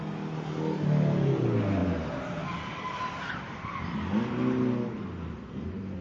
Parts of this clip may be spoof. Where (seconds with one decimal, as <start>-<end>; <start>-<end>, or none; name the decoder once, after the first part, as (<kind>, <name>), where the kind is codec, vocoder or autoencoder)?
none